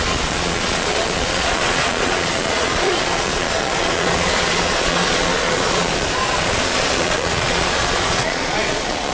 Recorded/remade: remade